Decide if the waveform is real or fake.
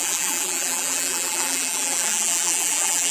fake